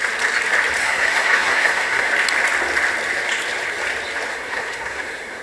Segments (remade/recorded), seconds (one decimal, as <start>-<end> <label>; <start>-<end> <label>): 0.0-0.8 recorded; 0.8-2.1 remade; 2.1-4.3 recorded; 4.3-5.4 remade